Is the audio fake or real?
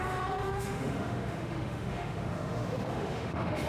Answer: fake